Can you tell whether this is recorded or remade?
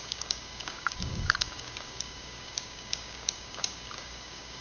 remade